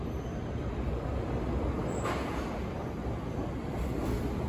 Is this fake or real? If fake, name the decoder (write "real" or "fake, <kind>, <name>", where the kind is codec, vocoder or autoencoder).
real